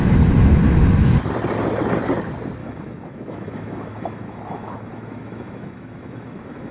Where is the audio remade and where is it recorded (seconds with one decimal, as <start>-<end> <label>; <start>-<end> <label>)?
0.0-2.6 recorded; 2.6-6.7 remade